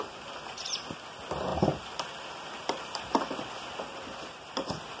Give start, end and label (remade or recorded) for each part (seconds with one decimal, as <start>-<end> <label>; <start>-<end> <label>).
0.0-5.0 recorded